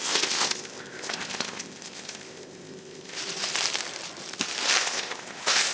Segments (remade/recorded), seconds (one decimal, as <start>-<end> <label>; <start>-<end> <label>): 0.0-3.2 remade; 3.2-4.8 recorded; 4.8-5.7 remade